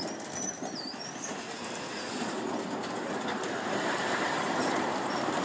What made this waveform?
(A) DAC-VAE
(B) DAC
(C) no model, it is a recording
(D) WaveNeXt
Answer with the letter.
C